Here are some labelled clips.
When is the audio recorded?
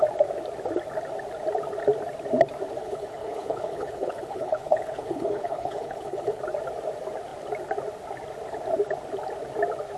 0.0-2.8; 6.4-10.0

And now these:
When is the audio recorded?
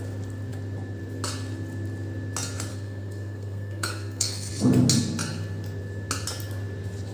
0.0-2.7; 4.5-7.1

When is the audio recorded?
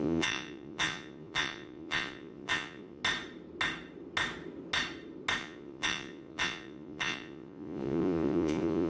3.0-5.4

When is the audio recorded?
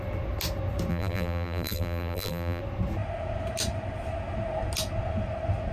0.0-0.9; 2.6-5.7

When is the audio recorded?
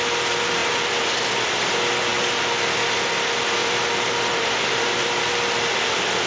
0.0-0.6; 1.7-3.6; 5.2-6.3